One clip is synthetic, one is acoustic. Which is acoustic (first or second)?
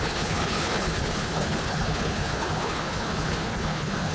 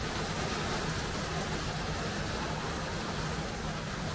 second